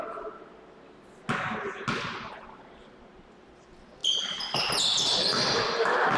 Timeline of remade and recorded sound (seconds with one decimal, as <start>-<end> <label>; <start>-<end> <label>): 0.0-6.2 recorded